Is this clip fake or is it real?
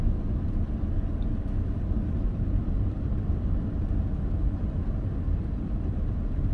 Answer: fake